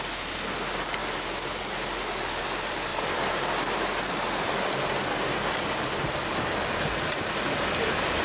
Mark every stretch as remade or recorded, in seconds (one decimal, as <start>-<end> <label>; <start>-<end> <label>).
0.0-8.2 recorded